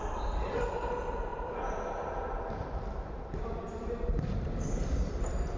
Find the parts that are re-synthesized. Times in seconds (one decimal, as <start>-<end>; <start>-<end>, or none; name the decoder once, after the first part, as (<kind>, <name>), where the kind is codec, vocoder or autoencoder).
0.0-5.6 (vocoder, BigVGAN v2)